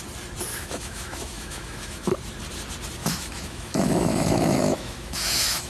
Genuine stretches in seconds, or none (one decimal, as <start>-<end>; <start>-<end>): 0.0-0.5; 2.1-3.0

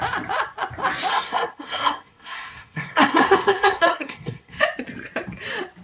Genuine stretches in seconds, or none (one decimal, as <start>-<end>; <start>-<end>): 0.0-1.1; 4.6-5.8